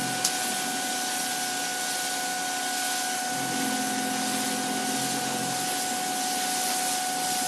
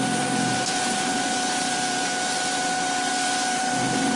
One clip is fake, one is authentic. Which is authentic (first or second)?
first